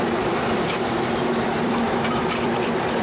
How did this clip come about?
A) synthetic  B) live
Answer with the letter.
A